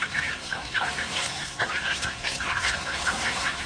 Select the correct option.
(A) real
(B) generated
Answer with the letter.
B